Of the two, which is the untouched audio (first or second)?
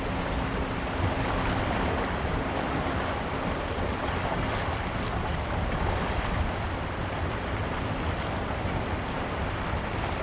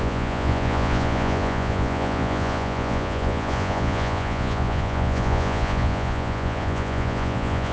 first